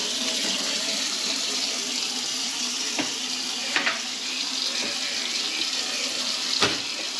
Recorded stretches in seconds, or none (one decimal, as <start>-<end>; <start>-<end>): 1.9-2.3; 2.9-3.6; 4.4-7.2